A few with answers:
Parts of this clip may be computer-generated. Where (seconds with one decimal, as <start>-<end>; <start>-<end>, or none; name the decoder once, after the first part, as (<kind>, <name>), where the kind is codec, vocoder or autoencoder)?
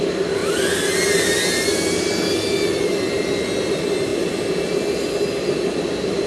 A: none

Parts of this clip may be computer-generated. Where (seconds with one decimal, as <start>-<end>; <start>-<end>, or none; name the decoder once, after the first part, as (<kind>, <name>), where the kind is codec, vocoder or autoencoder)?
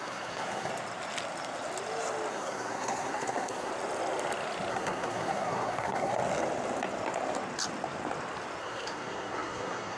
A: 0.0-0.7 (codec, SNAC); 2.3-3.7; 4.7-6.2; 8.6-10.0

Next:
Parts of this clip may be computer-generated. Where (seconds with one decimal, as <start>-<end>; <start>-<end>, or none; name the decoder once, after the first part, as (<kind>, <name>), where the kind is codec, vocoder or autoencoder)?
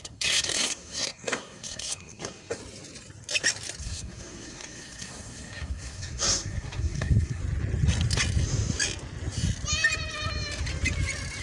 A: 0.0-2.6 (codec, SNAC); 3.8-7.4